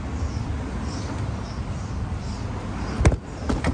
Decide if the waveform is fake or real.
real